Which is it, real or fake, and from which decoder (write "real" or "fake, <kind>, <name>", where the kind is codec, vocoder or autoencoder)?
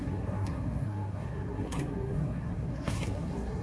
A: fake, codec, SNAC